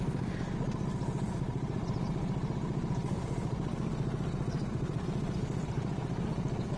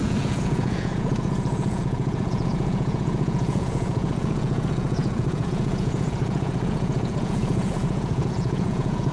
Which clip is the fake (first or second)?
second